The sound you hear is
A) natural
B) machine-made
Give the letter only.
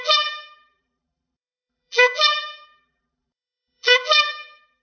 B